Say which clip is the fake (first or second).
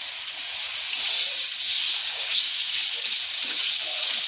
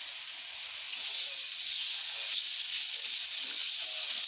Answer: first